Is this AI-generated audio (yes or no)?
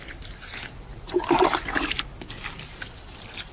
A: no